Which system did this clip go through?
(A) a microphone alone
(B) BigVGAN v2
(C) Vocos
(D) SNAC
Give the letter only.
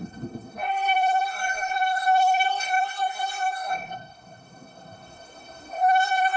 D